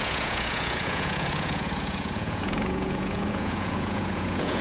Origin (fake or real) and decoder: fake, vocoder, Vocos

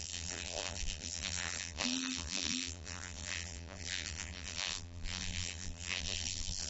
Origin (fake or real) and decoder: fake, vocoder, BigVGAN v2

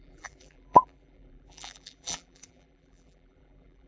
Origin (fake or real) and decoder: fake, vocoder, BigVGAN v2